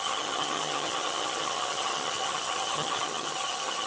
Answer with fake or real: fake